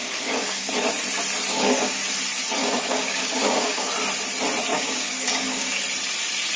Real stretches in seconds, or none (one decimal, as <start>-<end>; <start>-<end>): 0.7-1.5; 2.0-2.6; 3.9-4.7; 5.8-6.6